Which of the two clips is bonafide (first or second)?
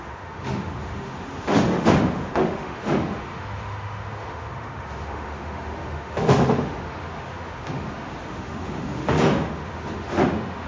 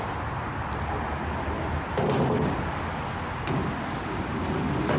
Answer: second